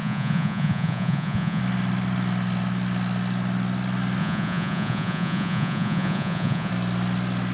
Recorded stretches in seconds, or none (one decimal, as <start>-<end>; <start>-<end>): 1.6-4.2; 6.7-7.5